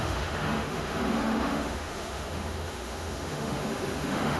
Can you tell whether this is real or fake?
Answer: fake